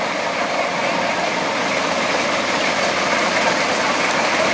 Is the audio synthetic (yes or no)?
no